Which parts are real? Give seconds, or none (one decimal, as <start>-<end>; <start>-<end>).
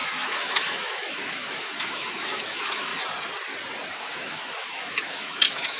2.9-3.9